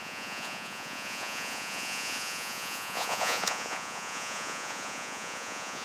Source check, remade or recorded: remade